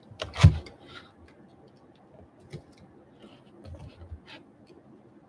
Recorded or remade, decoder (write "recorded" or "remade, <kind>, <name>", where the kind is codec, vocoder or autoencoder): recorded